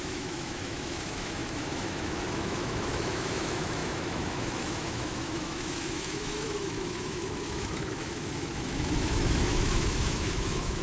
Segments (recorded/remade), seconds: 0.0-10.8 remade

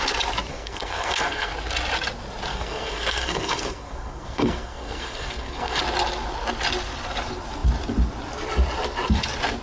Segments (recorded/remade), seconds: 0.0-0.5 recorded; 0.5-1.5 remade; 1.5-2.5 recorded; 2.5-5.8 remade; 5.8-9.6 recorded

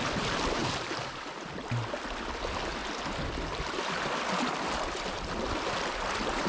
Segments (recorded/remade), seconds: 0.0-6.5 recorded

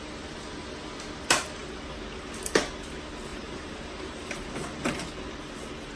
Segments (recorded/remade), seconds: 0.0-3.3 recorded; 3.3-4.3 remade; 4.3-6.0 recorded

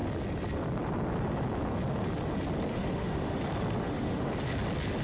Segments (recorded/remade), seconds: 0.0-2.7 recorded; 2.7-3.4 remade; 3.4-3.8 recorded; 3.8-4.3 remade; 4.3-5.0 recorded

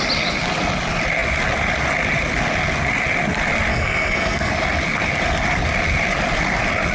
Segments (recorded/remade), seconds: 0.0-3.7 recorded; 3.7-4.5 remade; 4.5-6.9 recorded